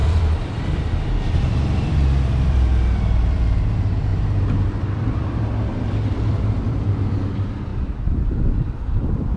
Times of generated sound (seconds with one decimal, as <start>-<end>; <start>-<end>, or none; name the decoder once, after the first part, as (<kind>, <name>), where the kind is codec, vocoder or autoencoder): 0.0-9.4 (vocoder, BigVGAN v2)